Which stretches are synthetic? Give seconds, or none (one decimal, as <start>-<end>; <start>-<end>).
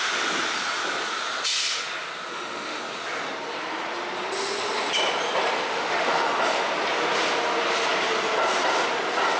2.3-2.8; 5.7-6.2